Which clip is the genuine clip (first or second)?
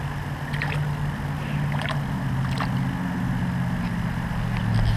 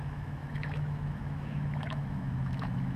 first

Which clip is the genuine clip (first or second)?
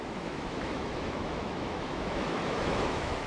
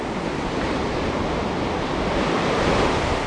second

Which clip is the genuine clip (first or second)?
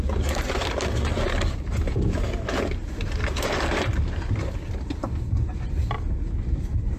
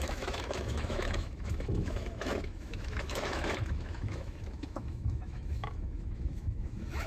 first